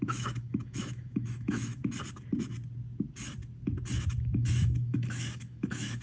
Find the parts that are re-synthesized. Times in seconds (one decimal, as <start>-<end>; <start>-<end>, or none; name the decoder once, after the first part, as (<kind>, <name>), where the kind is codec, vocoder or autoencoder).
0.0-1.8 (autoencoder, DAC-VAE); 4.2-6.0